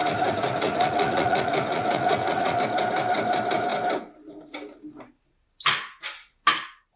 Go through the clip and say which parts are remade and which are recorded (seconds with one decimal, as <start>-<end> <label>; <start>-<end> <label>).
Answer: 0.0-2.6 remade; 2.6-7.0 recorded